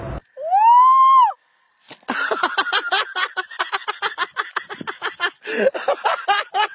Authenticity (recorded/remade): recorded